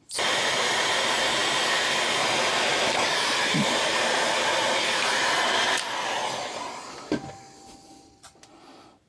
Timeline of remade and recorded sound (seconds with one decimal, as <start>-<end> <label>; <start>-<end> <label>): 0.0-9.1 recorded